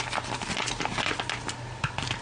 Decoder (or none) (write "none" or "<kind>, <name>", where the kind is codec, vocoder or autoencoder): vocoder, BigVGAN v2